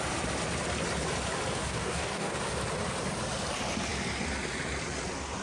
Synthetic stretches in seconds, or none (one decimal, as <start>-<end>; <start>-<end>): 1.6-2.4